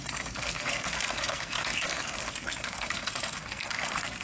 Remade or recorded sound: remade